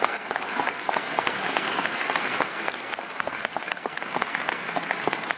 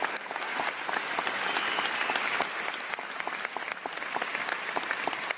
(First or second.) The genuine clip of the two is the second